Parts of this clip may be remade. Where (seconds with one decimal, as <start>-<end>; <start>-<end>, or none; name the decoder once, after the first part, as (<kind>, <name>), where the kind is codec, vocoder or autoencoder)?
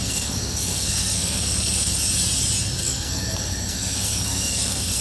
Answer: 0.0-1.9 (codec, SNAC); 2.8-5.0